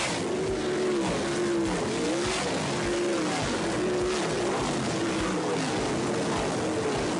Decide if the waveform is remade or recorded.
recorded